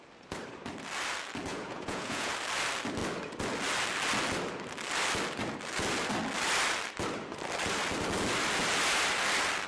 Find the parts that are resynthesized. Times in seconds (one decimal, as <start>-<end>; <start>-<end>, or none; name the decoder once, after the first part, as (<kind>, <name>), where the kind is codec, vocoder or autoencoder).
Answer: 1.5-2.3 (vocoder, Vocos)